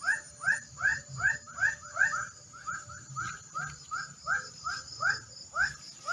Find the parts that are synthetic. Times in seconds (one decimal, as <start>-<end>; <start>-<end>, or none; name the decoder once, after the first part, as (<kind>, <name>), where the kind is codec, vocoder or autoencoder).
none